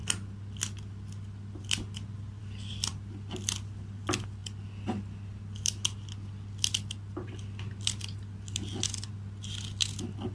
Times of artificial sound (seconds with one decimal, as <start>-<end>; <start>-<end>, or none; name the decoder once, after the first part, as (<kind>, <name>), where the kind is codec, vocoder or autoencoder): none